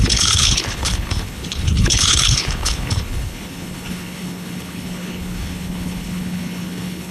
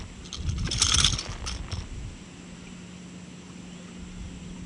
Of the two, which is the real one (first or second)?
second